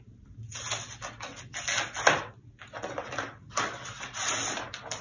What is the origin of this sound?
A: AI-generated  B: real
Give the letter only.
B